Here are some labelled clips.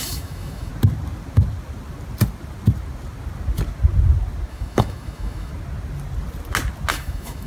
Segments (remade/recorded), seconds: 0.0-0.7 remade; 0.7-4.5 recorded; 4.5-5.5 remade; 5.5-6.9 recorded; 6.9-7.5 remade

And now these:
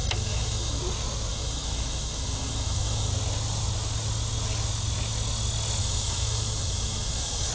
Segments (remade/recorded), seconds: 0.0-0.8 remade; 0.8-1.3 recorded; 1.3-3.1 remade; 3.1-5.8 recorded; 5.8-7.5 remade

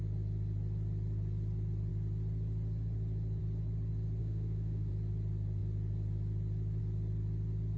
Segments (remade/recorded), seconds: 0.0-4.2 recorded; 4.2-4.9 remade; 4.9-7.8 recorded